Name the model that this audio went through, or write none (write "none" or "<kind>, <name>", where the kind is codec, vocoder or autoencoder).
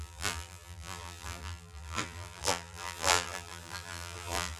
vocoder, BigVGAN v2